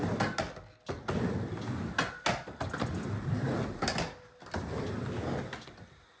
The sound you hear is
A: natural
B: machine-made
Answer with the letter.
A